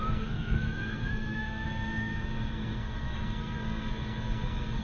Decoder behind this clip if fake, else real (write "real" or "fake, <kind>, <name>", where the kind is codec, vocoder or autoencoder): fake, codec, SNAC